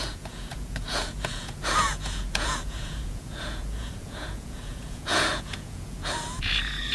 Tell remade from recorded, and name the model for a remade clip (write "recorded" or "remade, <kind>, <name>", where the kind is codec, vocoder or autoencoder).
remade, vocoder, Vocos